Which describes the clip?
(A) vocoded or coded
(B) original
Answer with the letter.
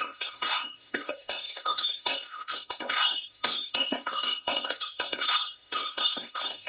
A